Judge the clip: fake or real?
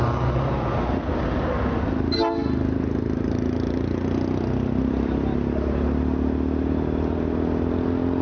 real